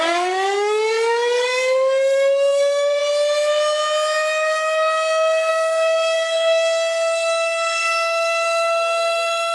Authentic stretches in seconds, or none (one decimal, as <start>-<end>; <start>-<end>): 3.0-5.5